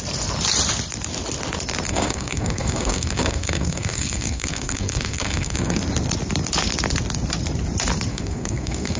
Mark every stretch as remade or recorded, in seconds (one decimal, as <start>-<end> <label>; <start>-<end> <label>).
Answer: 0.0-1.9 recorded; 1.9-5.8 remade; 5.8-8.1 recorded; 8.1-9.0 remade